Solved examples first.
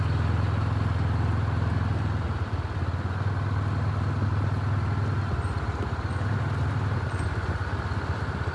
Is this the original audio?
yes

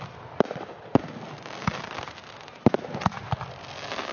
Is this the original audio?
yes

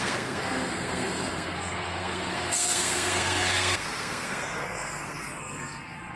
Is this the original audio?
no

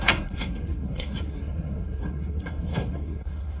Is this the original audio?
no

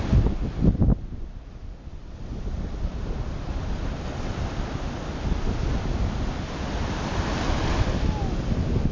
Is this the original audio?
yes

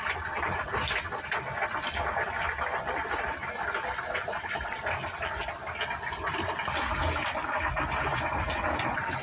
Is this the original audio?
yes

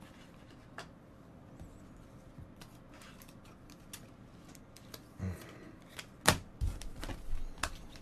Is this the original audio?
yes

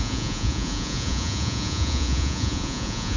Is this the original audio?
no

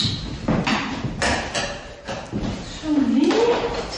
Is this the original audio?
yes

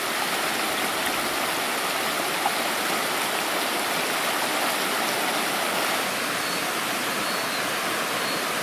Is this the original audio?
yes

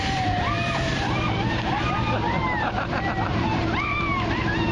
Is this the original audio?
no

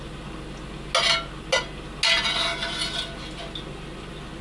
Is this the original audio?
yes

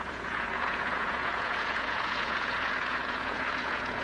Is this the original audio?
no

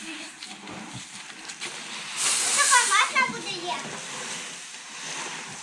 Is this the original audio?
yes